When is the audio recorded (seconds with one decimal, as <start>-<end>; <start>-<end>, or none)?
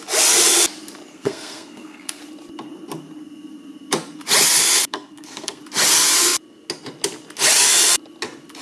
0.0-1.1; 2.2-4.8; 5.6-8.6